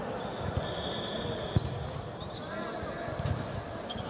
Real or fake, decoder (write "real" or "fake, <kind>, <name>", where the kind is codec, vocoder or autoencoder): real